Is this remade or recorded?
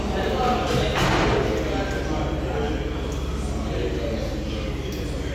recorded